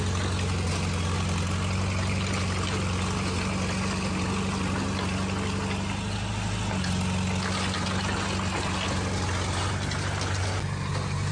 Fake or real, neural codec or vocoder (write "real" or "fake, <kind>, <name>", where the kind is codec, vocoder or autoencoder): real